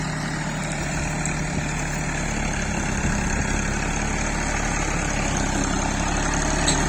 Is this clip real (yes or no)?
yes